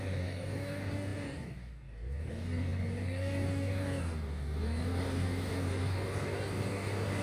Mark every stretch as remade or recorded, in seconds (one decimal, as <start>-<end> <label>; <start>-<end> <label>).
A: 0.0-7.2 remade